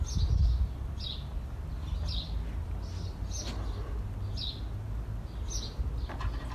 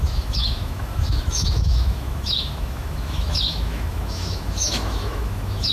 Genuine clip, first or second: first